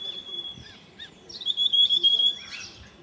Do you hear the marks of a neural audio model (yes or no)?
no